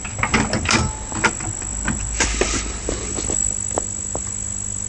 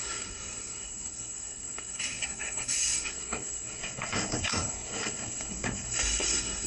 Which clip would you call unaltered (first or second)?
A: first